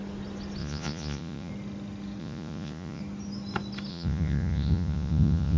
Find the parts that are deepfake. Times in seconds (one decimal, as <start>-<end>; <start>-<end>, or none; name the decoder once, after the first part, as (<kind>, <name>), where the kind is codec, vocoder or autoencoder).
0.6-1.5 (vocoder, Vocos); 2.2-3.0; 3.9-5.6